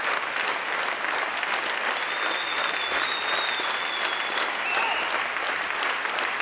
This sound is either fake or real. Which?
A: real